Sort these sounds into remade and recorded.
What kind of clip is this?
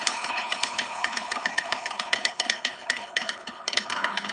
remade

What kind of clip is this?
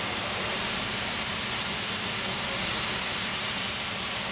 recorded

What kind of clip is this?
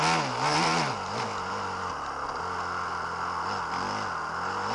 recorded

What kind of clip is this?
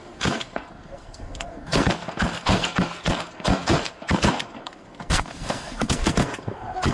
remade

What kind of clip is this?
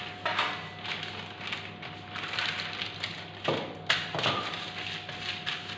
recorded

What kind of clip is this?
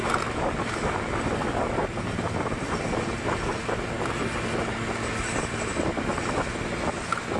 recorded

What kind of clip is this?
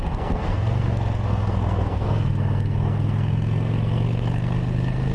remade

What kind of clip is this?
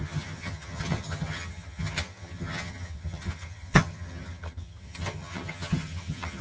remade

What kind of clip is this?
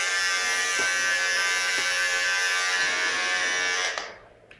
recorded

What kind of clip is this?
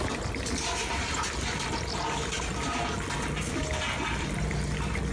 recorded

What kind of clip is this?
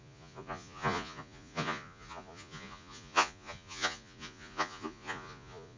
remade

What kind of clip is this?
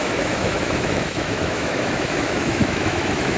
remade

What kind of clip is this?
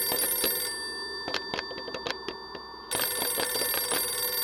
recorded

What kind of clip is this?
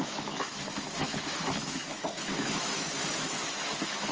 remade